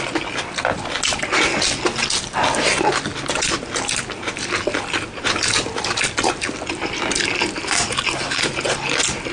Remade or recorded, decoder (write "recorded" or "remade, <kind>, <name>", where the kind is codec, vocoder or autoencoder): recorded